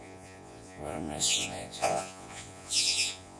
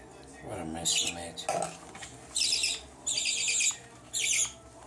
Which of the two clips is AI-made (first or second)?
first